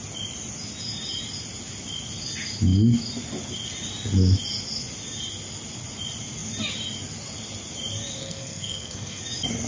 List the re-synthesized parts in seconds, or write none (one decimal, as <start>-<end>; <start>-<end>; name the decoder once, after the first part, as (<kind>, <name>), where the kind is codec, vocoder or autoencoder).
8.2-9.2 (codec, SNAC)